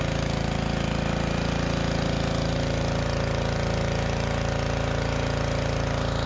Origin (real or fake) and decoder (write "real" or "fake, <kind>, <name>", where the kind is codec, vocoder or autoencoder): real